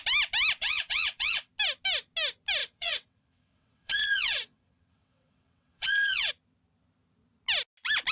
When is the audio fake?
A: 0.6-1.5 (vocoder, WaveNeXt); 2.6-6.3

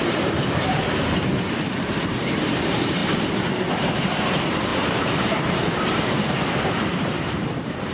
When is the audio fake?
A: 0.0-3.0 (vocoder, BigVGAN v2); 3.7-7.9